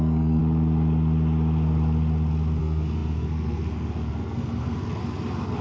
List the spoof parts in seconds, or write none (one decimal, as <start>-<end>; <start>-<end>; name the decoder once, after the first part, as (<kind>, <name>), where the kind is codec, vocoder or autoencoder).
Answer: 0.0-0.4 (codec, SNAC); 2.6-5.0